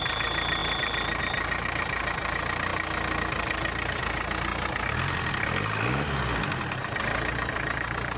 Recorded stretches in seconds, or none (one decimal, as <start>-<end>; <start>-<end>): 0.0-8.2